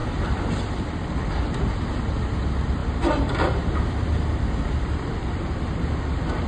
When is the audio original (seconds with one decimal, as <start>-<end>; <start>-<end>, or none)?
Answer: 1.4-2.8